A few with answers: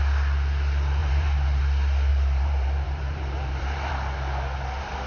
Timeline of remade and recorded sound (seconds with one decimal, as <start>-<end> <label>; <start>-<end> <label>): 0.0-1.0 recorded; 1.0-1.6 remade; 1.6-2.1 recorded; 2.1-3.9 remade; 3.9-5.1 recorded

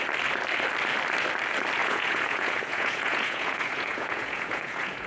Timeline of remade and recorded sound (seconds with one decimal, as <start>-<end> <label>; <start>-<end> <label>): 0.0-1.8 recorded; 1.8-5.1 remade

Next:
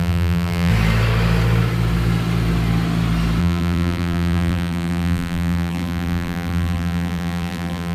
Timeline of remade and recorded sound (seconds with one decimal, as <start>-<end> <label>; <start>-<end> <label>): 0.0-0.7 remade; 0.7-3.4 recorded; 3.4-7.9 remade